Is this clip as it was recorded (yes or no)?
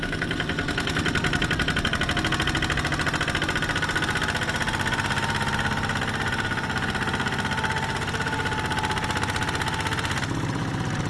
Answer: yes